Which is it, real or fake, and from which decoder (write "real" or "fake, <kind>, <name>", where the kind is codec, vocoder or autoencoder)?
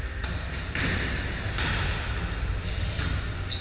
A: real